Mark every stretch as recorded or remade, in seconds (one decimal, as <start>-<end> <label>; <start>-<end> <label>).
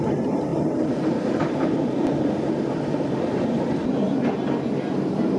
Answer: 0.0-0.5 recorded; 0.5-3.7 remade; 3.7-5.4 recorded